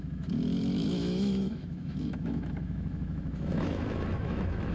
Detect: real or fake fake